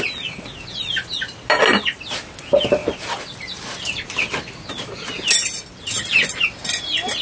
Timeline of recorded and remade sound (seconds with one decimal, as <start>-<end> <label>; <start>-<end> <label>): 0.0-2.8 recorded; 2.8-5.1 remade; 5.1-7.2 recorded